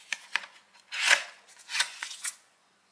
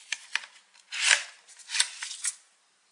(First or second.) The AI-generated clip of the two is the first